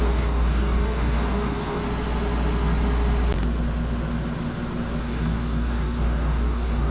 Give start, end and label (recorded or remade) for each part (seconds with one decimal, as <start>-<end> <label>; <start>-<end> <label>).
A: 0.0-1.8 remade; 1.8-5.0 recorded; 5.0-6.9 remade